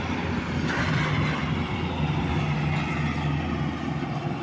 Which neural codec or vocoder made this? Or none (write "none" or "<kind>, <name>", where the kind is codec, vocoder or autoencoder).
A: none